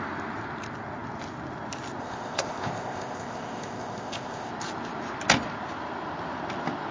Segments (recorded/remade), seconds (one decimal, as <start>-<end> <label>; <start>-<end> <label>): 0.0-2.0 recorded; 2.0-4.5 remade; 4.5-6.9 recorded